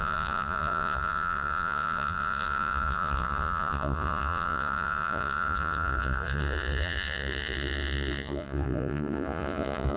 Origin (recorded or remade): remade